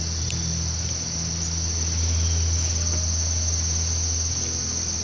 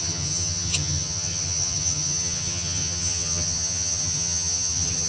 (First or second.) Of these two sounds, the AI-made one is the second